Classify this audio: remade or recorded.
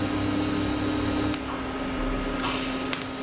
recorded